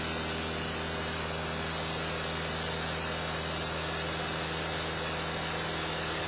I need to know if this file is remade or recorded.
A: recorded